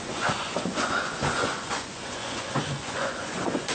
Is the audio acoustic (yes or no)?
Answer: no